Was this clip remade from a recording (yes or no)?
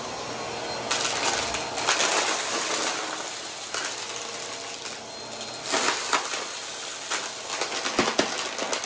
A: no